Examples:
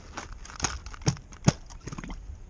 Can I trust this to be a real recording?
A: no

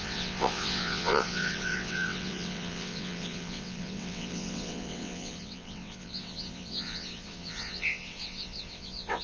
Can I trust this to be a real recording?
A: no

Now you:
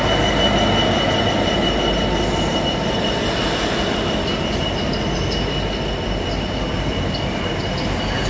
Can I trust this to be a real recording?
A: yes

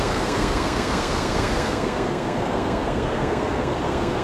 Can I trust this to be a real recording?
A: no